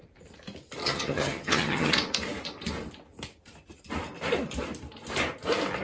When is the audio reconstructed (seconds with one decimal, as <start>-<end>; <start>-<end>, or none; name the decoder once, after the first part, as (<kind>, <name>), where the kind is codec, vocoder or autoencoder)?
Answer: 0.8-1.9 (vocoder, HiFi-GAN)